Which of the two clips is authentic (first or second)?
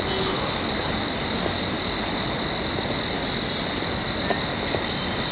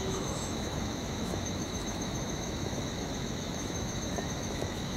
first